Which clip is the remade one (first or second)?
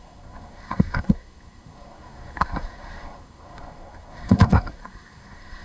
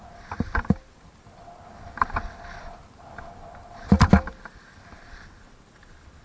first